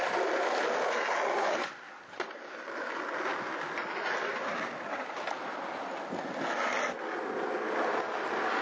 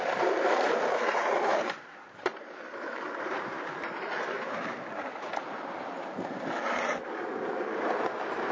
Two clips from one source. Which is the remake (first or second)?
second